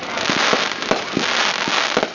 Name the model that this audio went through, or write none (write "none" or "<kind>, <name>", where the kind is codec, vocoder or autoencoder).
none